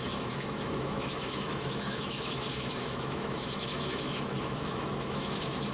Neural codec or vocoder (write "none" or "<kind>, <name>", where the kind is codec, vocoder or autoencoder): autoencoder, DAC-VAE